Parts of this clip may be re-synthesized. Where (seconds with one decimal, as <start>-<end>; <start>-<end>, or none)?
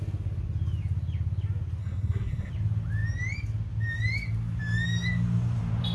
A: 1.8-2.5